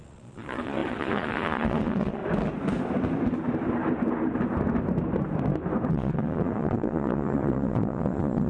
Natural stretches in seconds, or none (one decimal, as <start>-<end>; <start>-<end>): 2.2-5.9